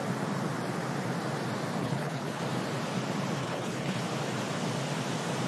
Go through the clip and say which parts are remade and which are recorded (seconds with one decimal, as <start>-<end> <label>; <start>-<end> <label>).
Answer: 0.0-1.8 recorded; 1.8-2.4 remade; 2.4-3.4 recorded; 3.4-4.0 remade; 4.0-5.5 recorded